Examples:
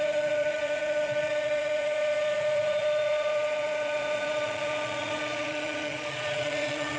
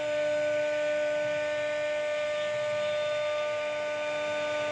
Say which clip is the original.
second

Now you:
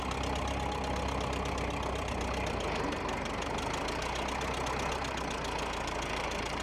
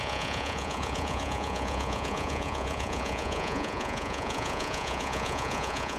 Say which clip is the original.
first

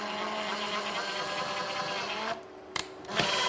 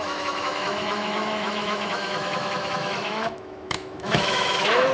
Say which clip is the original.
first